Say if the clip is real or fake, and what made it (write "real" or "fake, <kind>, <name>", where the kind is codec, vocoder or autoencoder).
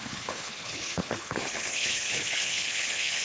fake, codec, HILCodec